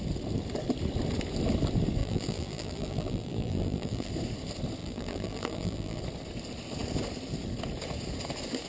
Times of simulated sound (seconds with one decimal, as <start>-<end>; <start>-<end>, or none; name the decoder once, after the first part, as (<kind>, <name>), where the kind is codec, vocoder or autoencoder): 2.0-4.1 (vocoder, BigVGAN v2); 4.8-6.0